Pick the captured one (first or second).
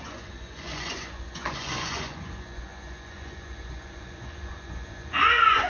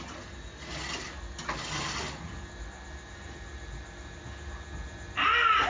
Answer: second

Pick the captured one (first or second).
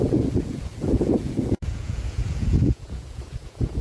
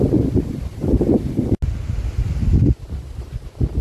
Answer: second